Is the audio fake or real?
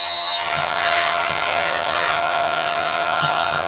fake